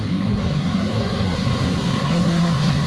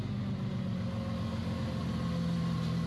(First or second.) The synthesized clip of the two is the first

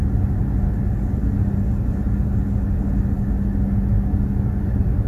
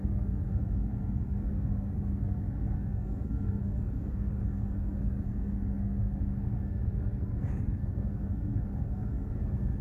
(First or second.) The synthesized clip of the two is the second